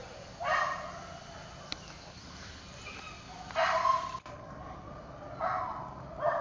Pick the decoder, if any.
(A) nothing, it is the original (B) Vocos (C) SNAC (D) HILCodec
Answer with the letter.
A